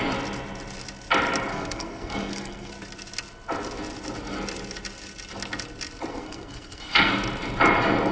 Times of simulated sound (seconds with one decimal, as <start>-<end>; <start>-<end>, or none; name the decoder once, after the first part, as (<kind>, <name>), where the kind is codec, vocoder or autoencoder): 1.5-2.7 (codec, SNAC); 6.1-7.1